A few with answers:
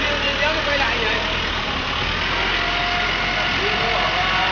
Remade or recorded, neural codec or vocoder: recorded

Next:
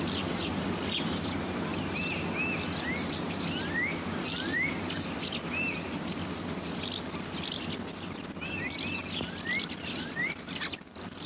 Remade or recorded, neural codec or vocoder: recorded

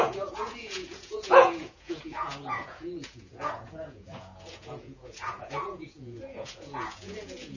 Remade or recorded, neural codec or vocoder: remade, vocoder, Vocos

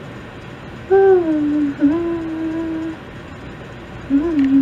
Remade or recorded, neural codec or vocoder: recorded